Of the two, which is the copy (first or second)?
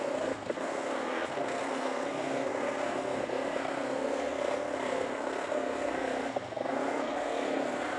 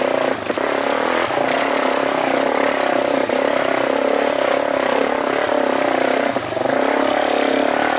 first